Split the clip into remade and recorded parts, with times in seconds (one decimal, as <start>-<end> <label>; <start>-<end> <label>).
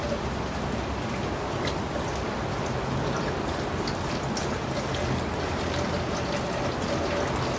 0.0-7.6 recorded